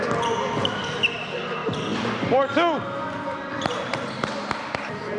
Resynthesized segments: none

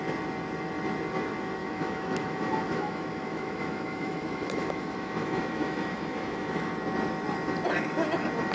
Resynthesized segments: 1.6-6.7 (autoencoder, DAC-VAE)

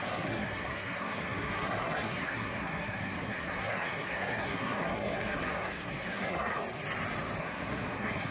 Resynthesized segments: 0.0-6.6 (codec, SNAC); 7.4-8.3

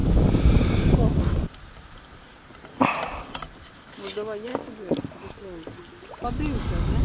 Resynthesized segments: none

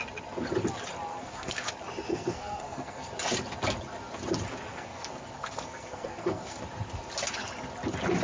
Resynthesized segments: 1.1-1.7 (codec, SNAC); 2.1-3.1; 4.7-6.6